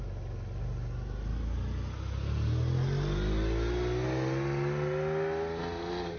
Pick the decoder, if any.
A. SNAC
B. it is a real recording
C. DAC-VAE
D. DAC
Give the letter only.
B